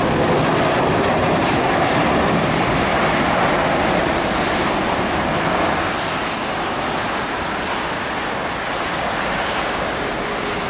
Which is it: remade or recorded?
recorded